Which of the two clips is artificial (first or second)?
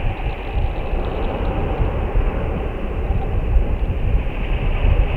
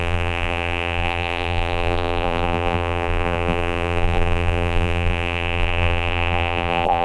second